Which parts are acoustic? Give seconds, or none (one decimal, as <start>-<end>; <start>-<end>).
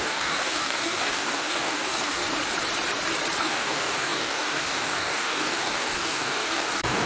2.2-3.4